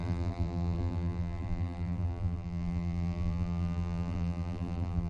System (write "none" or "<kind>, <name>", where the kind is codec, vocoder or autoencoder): vocoder, BigVGAN v2